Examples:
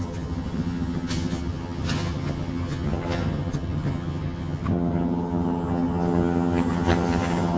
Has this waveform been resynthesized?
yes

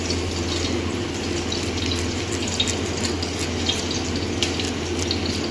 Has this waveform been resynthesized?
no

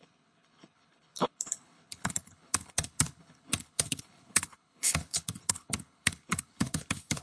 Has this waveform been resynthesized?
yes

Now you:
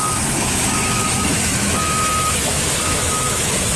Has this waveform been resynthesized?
yes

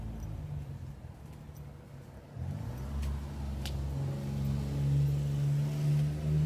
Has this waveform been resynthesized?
no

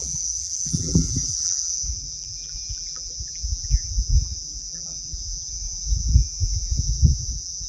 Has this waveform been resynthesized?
yes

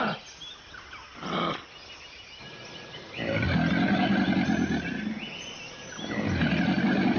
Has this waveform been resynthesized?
no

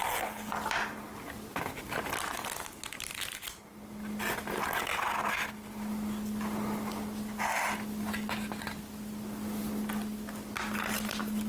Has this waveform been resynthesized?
no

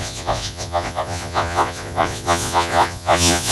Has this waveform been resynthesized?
yes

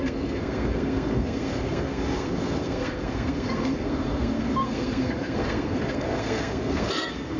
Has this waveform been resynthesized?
yes